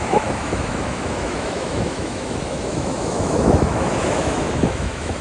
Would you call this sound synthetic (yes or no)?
yes